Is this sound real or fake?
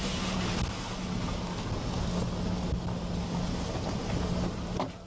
real